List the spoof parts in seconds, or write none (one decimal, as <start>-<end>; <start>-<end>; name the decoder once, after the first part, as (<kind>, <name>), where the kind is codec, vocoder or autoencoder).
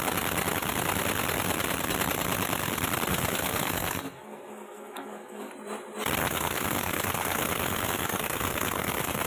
3.1-5.5 (codec, SNAC); 6.2-9.3